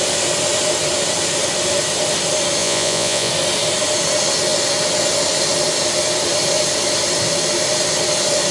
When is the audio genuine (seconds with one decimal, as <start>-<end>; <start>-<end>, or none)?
0.0-2.6; 3.3-8.5